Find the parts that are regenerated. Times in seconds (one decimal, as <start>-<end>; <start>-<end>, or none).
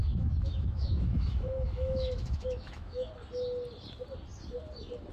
0.0-3.1